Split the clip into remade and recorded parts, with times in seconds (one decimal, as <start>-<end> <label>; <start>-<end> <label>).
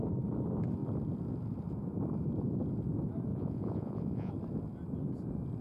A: 0.0-3.3 recorded; 3.3-4.3 remade; 4.3-5.6 recorded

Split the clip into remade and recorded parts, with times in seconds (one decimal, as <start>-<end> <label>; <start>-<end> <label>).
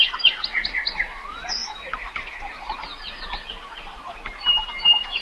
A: 0.0-5.2 recorded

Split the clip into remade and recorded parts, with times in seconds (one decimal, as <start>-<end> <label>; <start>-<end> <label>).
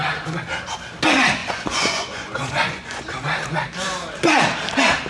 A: 0.0-1.4 recorded; 1.4-3.0 remade; 3.0-5.1 recorded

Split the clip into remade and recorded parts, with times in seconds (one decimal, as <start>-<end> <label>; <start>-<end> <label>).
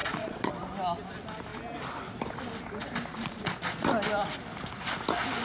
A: 0.0-0.5 remade; 0.5-3.1 recorded; 3.1-3.7 remade; 3.7-5.4 recorded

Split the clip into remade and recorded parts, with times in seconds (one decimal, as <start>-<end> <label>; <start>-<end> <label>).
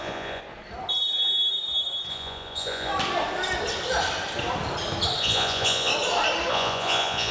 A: 0.0-0.4 remade; 0.4-2.1 recorded; 2.1-2.9 remade; 2.9-5.2 recorded; 5.2-5.9 remade; 5.9-6.5 recorded; 6.5-7.3 remade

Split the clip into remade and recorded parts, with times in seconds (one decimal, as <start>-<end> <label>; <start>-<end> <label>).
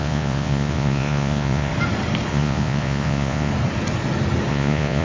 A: 0.0-1.7 remade; 1.7-2.3 recorded; 2.3-3.5 remade; 3.5-4.5 recorded; 4.5-5.0 remade